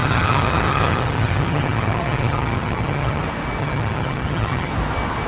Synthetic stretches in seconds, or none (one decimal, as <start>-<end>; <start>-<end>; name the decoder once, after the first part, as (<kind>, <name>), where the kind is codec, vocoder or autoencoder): 0.0-3.2 (vocoder, HiFi-GAN); 3.6-4.7